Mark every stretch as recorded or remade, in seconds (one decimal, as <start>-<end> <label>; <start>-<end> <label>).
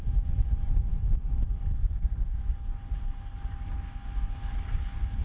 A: 0.0-5.2 recorded